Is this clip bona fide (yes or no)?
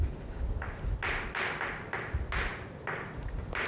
yes